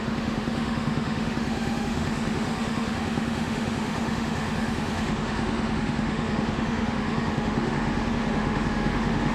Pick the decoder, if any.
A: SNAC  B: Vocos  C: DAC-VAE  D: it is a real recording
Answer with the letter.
C